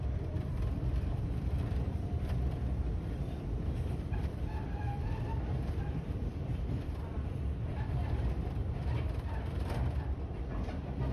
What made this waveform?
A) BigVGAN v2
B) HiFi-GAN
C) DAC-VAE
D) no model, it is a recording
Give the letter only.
A